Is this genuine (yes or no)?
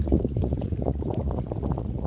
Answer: no